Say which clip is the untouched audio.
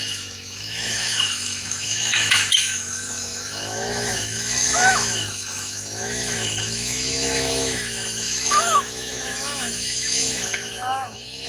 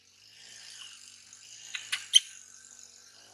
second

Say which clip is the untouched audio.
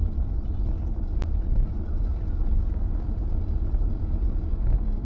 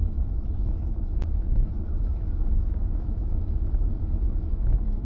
first